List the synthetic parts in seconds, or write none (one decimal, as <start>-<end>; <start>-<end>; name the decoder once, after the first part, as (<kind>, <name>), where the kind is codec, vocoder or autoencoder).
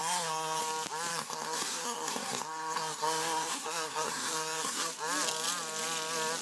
0.0-0.6 (codec, SNAC); 1.1-4.9